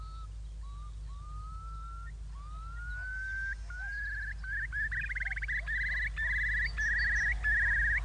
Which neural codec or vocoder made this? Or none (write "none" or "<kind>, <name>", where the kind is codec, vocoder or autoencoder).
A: none